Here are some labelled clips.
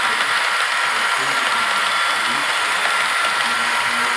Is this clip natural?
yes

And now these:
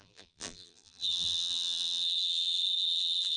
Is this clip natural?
no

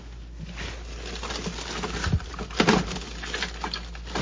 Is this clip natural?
yes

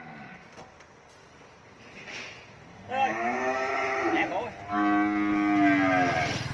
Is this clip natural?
yes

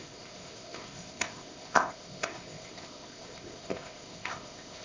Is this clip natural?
no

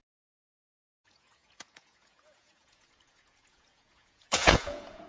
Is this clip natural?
no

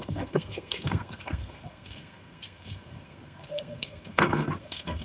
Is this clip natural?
no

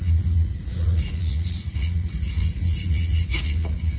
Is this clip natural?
no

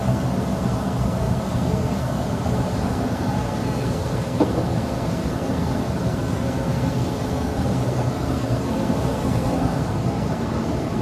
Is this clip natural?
no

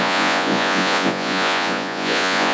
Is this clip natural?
no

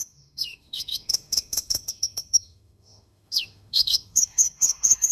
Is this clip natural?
no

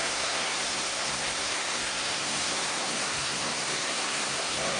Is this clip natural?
no